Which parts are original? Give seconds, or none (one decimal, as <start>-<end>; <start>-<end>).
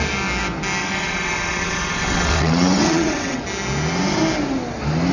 0.0-0.8; 3.4-5.1